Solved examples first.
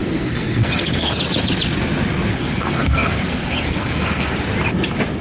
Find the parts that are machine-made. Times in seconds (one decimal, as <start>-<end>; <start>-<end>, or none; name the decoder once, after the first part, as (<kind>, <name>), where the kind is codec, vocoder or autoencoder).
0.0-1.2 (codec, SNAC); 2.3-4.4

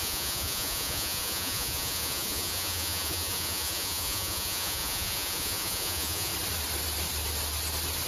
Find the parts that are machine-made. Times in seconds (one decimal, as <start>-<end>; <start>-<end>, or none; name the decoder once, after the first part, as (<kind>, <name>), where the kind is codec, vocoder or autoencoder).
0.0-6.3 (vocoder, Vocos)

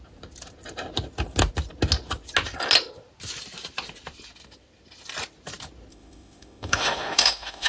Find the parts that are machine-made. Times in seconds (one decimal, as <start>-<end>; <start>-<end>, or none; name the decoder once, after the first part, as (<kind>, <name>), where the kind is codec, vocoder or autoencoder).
5.9-7.7 (autoencoder, DAC-VAE)

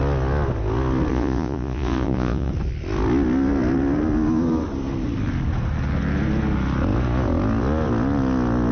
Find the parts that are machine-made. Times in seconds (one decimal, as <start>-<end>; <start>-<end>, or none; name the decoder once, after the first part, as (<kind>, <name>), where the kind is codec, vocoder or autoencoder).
1.1-2.5 (vocoder, Vocos)

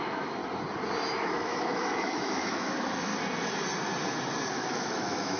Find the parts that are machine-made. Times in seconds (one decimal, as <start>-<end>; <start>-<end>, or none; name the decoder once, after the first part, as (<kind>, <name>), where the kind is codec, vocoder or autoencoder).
0.0-0.4 (autoencoder, DAC-VAE); 1.3-3.1; 4.5-5.4